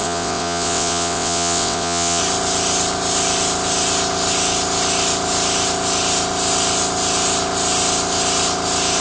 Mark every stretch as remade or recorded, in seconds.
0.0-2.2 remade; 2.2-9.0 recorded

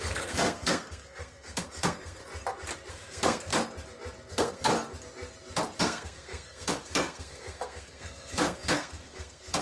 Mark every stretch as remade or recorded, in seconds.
0.0-2.2 remade; 2.2-2.9 recorded; 2.9-3.5 remade; 3.5-4.3 recorded; 4.3-4.7 remade; 4.7-5.8 recorded; 5.8-9.6 remade

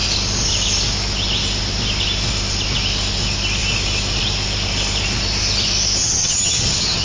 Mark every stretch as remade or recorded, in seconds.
0.0-6.0 recorded; 6.0-7.0 remade

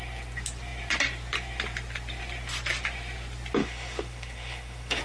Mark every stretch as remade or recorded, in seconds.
0.0-3.6 recorded; 3.6-5.0 remade

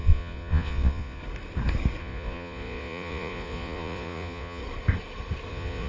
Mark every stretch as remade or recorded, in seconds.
0.0-1.2 remade; 1.2-2.0 recorded; 2.0-4.6 remade; 4.6-5.5 recorded; 5.5-5.9 remade

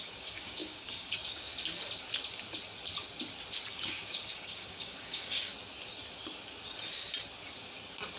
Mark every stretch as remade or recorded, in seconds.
0.0-1.5 remade; 1.5-3.7 recorded; 3.7-5.5 remade; 5.5-8.2 recorded